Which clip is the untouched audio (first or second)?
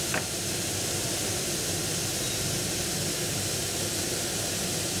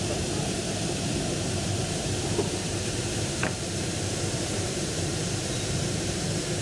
first